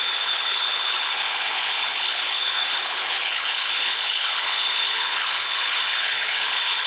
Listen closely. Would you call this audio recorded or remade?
remade